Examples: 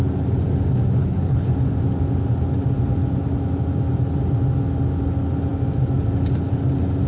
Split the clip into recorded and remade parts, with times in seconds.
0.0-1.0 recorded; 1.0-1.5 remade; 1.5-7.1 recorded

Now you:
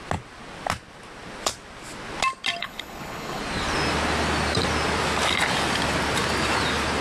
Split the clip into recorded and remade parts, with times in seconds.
0.0-2.6 recorded; 2.6-3.4 remade; 3.4-7.0 recorded

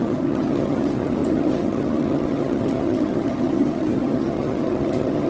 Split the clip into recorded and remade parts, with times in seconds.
0.0-5.3 remade

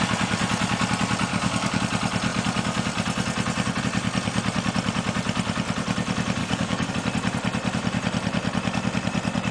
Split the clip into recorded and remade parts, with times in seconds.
0.0-1.3 recorded; 1.3-1.8 remade; 1.8-6.4 recorded; 6.4-6.9 remade; 6.9-9.5 recorded

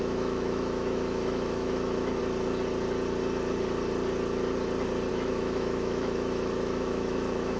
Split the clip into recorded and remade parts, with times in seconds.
0.0-2.2 remade; 2.2-5.1 recorded; 5.1-7.6 remade

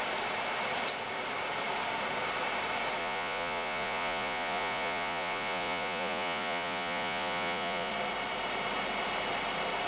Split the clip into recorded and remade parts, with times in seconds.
0.0-3.0 recorded; 3.0-7.9 remade; 7.9-9.9 recorded